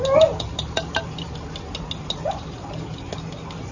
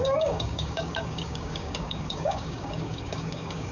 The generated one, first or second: second